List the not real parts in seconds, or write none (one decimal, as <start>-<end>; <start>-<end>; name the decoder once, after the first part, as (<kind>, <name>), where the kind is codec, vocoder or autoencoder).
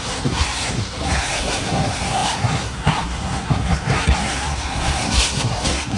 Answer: 0.0-6.0 (codec, SNAC)